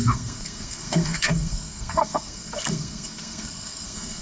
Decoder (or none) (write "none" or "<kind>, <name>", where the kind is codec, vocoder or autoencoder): codec, SNAC